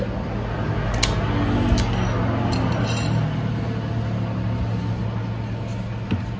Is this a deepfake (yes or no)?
no